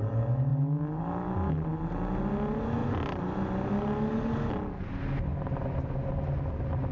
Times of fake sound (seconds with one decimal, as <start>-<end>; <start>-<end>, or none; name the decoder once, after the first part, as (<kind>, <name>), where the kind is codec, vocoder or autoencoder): 2.8-3.7 (vocoder, BigVGAN v2); 5.3-6.1